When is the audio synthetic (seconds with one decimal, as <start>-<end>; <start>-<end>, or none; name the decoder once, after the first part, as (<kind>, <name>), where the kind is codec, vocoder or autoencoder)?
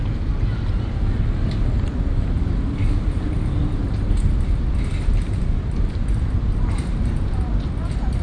3.8-7.3 (vocoder, BigVGAN v2)